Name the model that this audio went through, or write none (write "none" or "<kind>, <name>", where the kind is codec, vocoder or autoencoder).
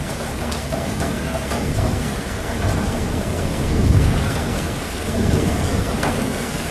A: codec, SNAC